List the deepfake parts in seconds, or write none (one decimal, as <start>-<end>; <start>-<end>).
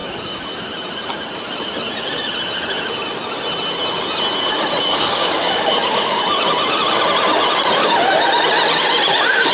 4.9-6.2